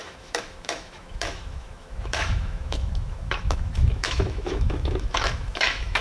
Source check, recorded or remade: remade